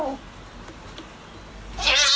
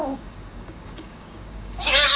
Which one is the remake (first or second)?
second